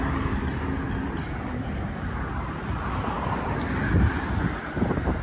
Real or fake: real